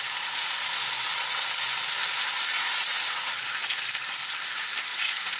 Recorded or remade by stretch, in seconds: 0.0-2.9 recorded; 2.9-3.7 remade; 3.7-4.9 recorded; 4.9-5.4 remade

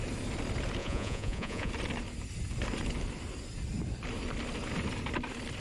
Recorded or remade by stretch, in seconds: 0.0-0.8 recorded; 0.8-1.7 remade; 1.7-5.6 recorded

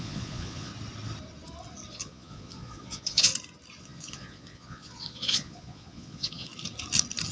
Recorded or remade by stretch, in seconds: 0.0-0.7 remade; 0.7-1.9 recorded; 1.9-3.3 remade; 3.3-3.8 recorded; 3.8-6.5 remade; 6.5-7.3 recorded

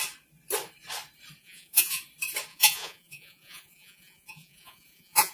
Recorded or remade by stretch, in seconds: 0.0-1.4 recorded; 1.4-2.0 remade; 2.0-2.5 recorded; 2.5-5.3 remade

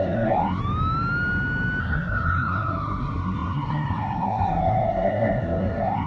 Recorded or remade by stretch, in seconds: 0.0-0.6 remade; 0.6-1.8 recorded; 1.8-6.1 remade

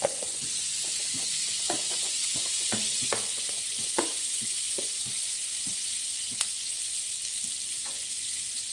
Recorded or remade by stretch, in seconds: 0.0-6.8 remade; 6.8-7.7 recorded; 7.7-8.7 remade